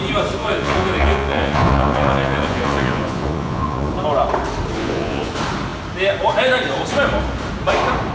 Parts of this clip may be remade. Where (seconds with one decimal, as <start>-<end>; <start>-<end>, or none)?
0.4-3.9; 4.8-5.3